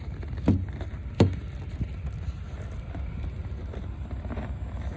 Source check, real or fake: real